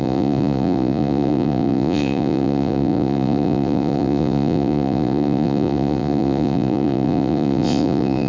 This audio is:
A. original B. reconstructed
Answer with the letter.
B